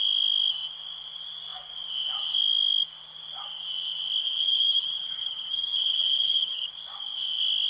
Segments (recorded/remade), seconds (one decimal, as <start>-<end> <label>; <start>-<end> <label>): 0.0-4.2 recorded; 4.2-6.7 remade; 6.7-7.7 recorded

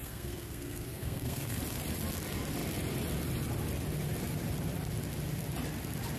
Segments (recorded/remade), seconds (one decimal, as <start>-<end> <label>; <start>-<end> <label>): 0.0-1.6 remade; 1.6-6.2 recorded

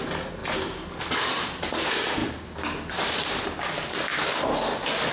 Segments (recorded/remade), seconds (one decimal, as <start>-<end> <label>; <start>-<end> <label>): 0.0-5.1 recorded